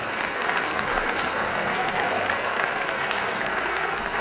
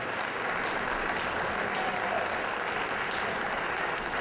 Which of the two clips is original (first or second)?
second